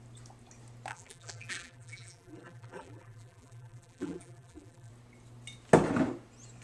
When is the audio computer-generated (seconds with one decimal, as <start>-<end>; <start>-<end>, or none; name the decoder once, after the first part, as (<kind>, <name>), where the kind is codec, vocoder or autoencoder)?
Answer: 0.9-4.9 (vocoder, BigVGAN v2)